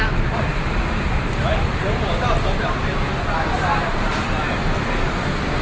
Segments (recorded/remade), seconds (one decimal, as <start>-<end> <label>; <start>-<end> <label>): 0.0-5.6 recorded